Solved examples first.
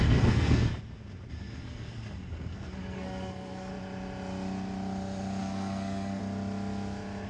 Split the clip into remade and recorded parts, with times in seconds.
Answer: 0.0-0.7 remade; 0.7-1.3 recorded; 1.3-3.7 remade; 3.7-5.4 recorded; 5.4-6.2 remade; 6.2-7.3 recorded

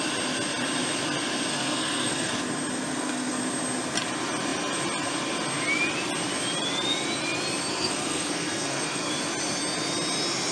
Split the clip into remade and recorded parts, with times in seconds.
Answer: 0.0-1.5 recorded; 1.5-2.3 remade; 2.3-2.9 recorded; 2.9-3.4 remade; 3.4-7.7 recorded; 7.7-9.1 remade; 9.1-10.5 recorded